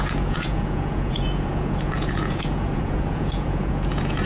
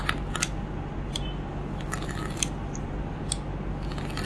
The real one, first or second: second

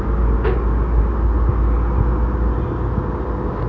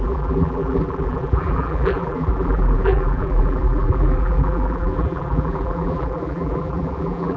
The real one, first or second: first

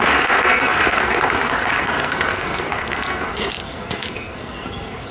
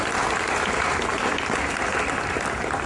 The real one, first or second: second